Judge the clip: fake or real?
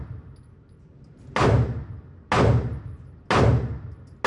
real